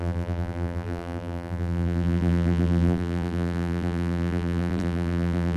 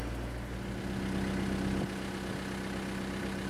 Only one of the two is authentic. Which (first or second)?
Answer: second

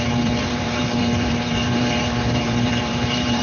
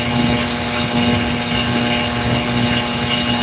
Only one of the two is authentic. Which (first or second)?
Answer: second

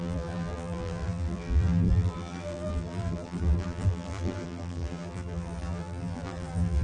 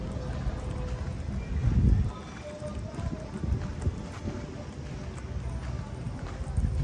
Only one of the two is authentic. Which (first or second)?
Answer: second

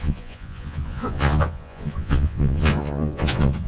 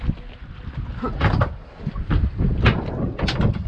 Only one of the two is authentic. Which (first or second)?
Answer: second